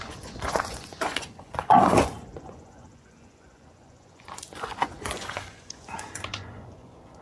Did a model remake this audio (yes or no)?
yes